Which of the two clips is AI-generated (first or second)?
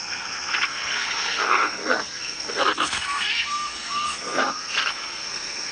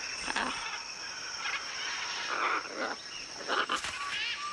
first